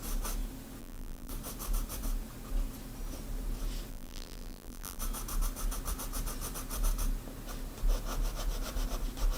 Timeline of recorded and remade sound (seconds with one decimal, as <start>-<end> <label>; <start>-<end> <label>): 0.0-0.8 recorded; 0.8-1.3 remade; 1.3-3.9 recorded; 3.9-5.0 remade; 5.0-9.4 recorded